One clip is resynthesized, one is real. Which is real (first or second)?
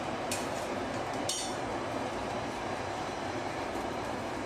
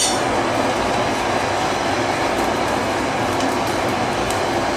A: second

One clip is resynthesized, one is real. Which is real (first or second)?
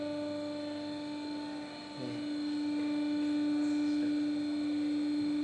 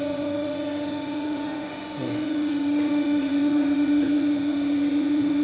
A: first